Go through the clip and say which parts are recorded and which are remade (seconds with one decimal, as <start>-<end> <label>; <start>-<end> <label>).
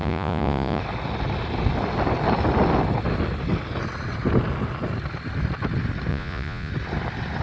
0.0-0.8 remade; 0.8-6.1 recorded; 6.1-6.7 remade; 6.7-7.4 recorded